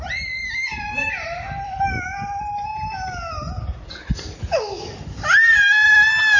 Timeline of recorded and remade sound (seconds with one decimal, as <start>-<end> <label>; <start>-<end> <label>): 0.0-6.4 recorded